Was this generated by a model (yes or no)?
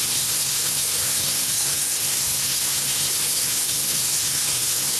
yes